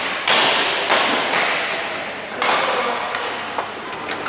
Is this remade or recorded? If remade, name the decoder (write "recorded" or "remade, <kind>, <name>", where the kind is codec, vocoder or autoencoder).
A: recorded